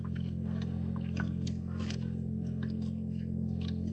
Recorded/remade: remade